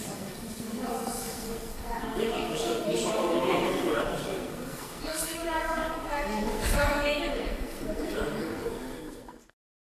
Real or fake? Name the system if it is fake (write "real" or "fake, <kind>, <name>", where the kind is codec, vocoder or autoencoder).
fake, codec, SNAC